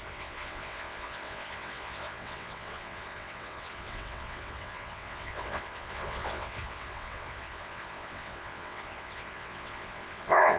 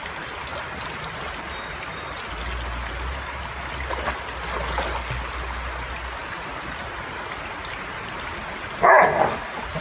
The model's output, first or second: first